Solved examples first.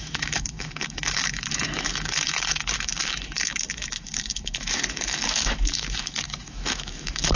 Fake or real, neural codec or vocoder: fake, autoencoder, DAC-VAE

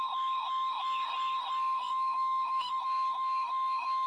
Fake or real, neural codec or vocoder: fake, autoencoder, DAC-VAE